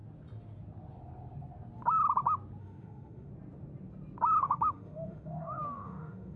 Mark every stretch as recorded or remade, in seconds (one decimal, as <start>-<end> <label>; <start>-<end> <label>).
0.0-2.6 recorded; 2.6-3.3 remade; 3.3-4.4 recorded; 4.4-6.4 remade